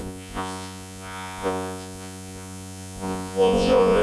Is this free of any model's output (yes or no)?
no